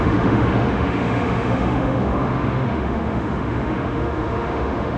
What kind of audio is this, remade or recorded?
remade